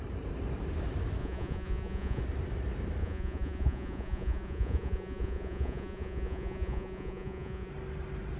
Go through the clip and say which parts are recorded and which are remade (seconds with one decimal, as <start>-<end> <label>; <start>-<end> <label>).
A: 0.0-1.2 recorded; 1.2-2.2 remade; 2.2-3.0 recorded; 3.0-7.7 remade; 7.7-8.4 recorded

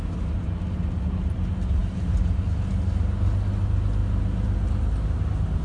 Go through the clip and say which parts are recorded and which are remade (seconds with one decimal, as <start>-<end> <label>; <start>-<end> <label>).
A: 0.0-5.6 recorded

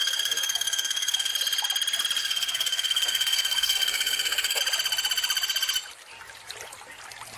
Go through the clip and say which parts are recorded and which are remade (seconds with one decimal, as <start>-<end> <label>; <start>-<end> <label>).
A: 0.0-1.3 remade; 1.3-2.2 recorded; 2.2-4.6 remade; 4.6-7.4 recorded

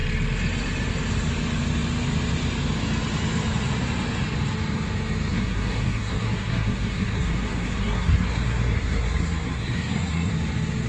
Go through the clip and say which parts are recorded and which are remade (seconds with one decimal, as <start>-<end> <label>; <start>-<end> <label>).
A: 0.0-5.3 recorded; 5.3-10.3 remade; 10.3-10.9 recorded

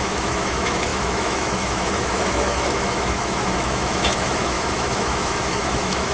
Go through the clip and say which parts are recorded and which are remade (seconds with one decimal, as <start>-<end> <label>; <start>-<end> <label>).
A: 0.0-6.1 remade